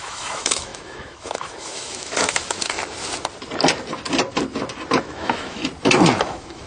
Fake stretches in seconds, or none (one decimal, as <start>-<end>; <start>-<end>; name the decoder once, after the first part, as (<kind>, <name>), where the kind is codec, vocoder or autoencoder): 0.0-2.8 (autoencoder, DAC-VAE); 5.0-5.6; 6.2-6.7